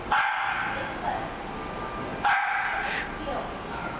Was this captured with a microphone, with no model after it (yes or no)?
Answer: yes